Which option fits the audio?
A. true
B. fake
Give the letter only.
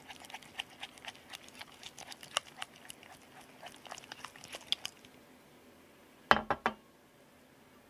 A